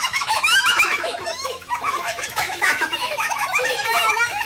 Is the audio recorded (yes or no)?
no